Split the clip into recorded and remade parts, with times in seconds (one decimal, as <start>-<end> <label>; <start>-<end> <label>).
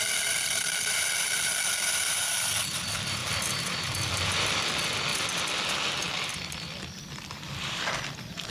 0.0-3.2 remade; 3.2-4.1 recorded; 4.1-8.5 remade